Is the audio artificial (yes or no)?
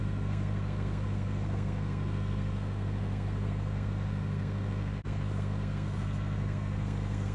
yes